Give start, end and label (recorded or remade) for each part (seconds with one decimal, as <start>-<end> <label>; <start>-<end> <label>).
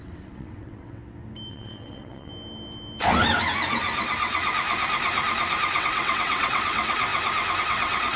0.0-1.0 remade; 1.0-1.5 recorded; 1.5-2.3 remade; 2.3-5.8 recorded; 5.8-7.1 remade; 7.1-7.6 recorded; 7.6-8.2 remade